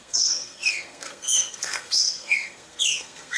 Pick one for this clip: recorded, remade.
remade